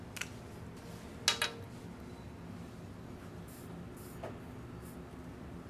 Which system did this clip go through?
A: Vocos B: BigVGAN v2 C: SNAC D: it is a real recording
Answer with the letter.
D